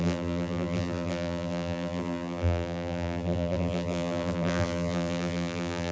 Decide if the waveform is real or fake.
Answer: fake